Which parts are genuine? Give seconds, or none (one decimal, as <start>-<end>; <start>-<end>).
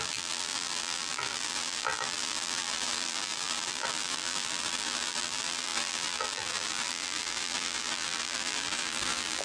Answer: none